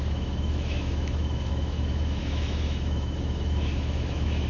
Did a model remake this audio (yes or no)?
yes